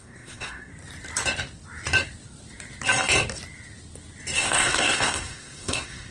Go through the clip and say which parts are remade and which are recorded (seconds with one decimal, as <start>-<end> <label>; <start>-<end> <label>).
0.0-0.7 remade; 0.7-4.4 recorded; 4.4-6.1 remade